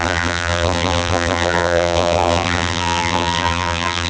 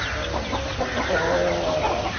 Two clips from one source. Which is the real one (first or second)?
second